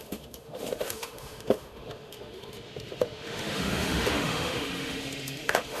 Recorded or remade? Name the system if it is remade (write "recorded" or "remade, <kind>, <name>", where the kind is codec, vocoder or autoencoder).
remade, autoencoder, DAC-VAE